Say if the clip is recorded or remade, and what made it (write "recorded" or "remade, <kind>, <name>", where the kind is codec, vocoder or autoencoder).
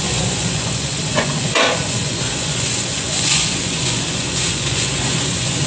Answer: remade, vocoder, Vocos